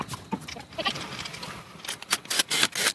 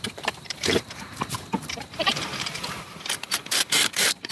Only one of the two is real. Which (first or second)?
first